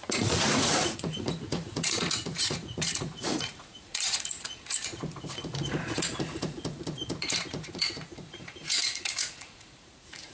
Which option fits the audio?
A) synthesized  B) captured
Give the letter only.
A